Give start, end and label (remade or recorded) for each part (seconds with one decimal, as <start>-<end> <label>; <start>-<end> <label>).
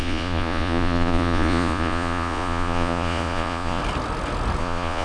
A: 0.0-3.8 remade; 3.8-4.6 recorded; 4.6-5.0 remade